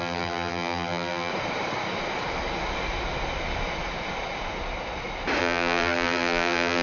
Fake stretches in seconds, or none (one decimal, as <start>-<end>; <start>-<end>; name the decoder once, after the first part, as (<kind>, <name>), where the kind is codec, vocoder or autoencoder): 0.0-1.3 (vocoder, BigVGAN v2); 5.4-6.8